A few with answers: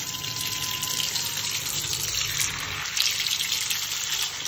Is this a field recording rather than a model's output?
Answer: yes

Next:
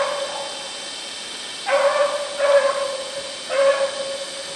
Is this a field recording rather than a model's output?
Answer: yes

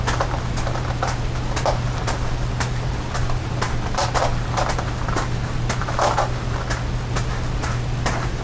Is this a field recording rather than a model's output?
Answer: yes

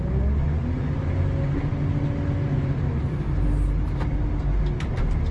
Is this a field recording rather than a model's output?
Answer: yes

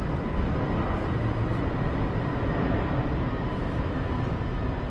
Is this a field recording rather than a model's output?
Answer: yes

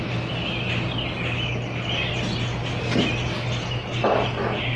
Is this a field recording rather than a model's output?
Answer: yes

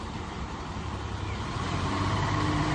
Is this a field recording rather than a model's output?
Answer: no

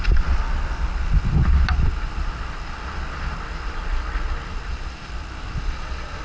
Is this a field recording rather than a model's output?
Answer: yes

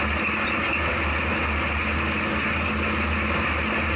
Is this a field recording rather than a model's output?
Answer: yes